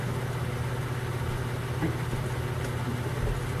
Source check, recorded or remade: recorded